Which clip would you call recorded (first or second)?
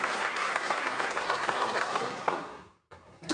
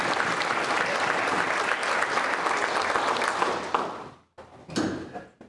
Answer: second